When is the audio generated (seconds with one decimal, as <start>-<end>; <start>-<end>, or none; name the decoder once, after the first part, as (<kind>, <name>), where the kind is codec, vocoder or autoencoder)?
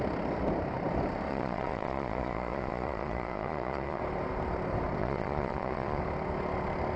1.3-4.0 (vocoder, Vocos); 5.0-6.0